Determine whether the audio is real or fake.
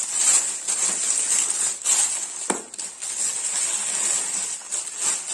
real